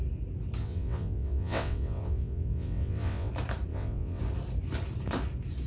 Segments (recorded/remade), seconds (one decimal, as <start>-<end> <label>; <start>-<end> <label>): 0.0-0.6 recorded; 0.6-3.3 remade; 3.3-3.7 recorded; 3.7-4.2 remade; 4.2-5.7 recorded